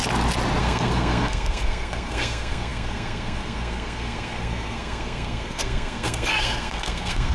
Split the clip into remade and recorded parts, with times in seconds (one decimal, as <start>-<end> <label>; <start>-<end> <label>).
0.0-0.6 recorded; 0.6-7.3 remade